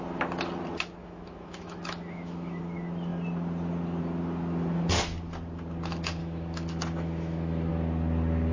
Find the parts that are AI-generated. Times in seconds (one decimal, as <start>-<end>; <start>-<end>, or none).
1.0-2.6; 6.2-7.7

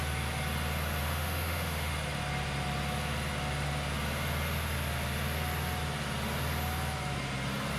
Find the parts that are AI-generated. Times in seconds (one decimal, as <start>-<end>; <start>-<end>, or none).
1.0-1.9

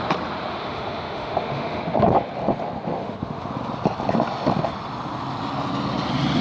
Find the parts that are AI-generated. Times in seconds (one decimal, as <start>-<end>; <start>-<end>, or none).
0.5-1.8; 2.9-3.5

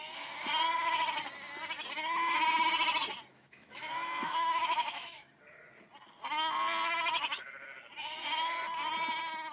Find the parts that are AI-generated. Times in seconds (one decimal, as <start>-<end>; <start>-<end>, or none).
3.3-5.3

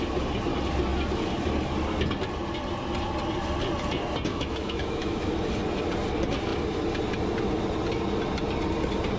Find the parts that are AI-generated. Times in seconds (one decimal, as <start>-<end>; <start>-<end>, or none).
4.3-5.3

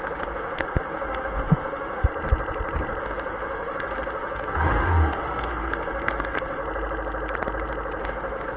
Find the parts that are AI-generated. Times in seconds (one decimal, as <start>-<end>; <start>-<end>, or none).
0.0-2.1; 3.0-6.6; 8.0-8.6

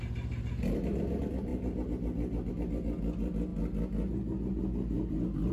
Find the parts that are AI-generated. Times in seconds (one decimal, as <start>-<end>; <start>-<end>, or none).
none